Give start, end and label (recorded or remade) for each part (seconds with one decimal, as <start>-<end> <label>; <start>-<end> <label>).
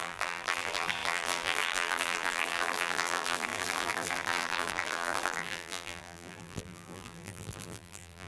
0.0-8.3 remade